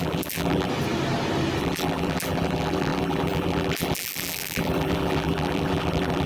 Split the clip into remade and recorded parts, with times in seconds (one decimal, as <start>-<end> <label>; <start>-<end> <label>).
0.0-0.7 remade; 0.7-1.6 recorded; 1.6-6.3 remade